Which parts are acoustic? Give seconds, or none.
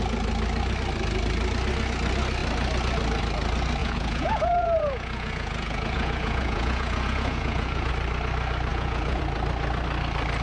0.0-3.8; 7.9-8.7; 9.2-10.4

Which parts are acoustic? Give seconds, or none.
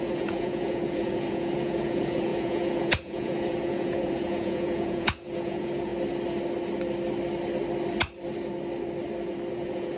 5.9-9.5